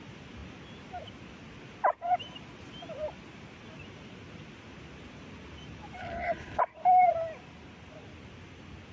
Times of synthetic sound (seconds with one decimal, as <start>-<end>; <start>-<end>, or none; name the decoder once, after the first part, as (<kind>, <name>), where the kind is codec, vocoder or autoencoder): 6.0-6.6 (codec, HILCodec)